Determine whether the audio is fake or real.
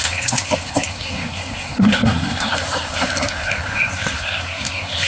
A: fake